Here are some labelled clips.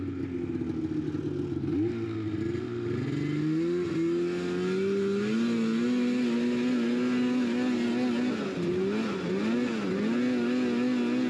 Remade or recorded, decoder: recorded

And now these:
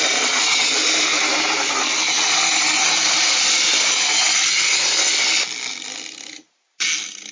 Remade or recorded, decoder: recorded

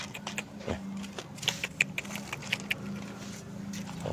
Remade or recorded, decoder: recorded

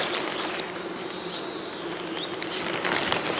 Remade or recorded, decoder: recorded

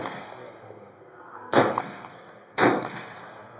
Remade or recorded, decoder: remade, codec, SNAC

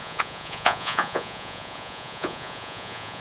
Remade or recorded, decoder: remade, vocoder, Vocos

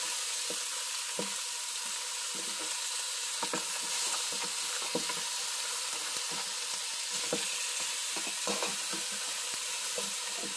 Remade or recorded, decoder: recorded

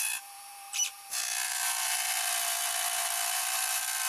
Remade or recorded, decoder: remade, vocoder, BigVGAN v2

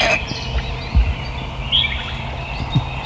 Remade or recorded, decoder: recorded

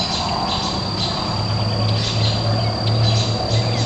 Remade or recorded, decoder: recorded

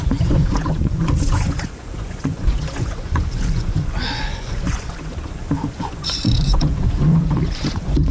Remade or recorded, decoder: remade, vocoder, Vocos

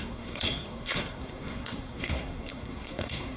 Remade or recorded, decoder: remade, codec, SNAC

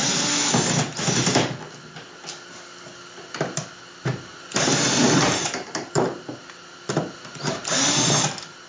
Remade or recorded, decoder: recorded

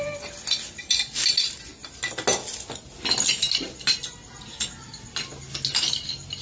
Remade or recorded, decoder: recorded